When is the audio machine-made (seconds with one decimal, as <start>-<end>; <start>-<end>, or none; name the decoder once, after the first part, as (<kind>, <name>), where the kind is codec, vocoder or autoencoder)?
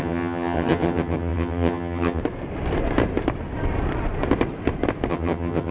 0.0-2.2 (vocoder, HiFi-GAN); 5.1-5.7